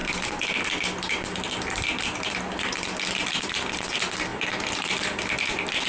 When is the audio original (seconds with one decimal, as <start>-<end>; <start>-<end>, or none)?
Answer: 3.5-5.9